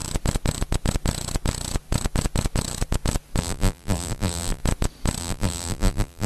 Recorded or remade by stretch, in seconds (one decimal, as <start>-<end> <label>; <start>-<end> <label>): 0.0-3.4 recorded; 3.4-4.6 remade; 4.6-5.2 recorded; 5.2-6.3 remade